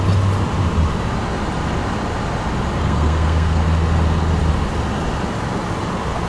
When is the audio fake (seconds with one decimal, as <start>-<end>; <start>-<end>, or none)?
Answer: 2.8-3.6